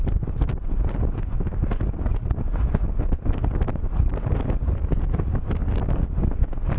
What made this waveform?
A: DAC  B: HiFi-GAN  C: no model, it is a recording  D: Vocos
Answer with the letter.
C